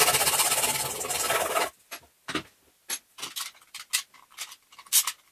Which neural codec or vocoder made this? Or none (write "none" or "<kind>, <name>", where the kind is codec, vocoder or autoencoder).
none